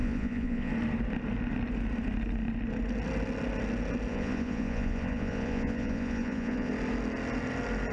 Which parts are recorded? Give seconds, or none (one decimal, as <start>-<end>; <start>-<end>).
0.7-4.1; 6.7-7.9